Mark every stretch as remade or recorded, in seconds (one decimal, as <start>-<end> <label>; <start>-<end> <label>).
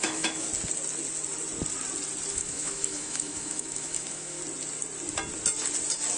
0.0-0.5 remade; 0.5-2.3 recorded; 2.3-4.4 remade; 4.4-6.2 recorded